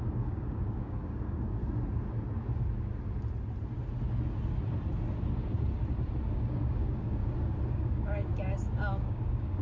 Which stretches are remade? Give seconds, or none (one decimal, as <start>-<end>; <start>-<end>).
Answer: 0.0-1.6; 6.3-7.2; 7.7-8.3; 8.9-9.6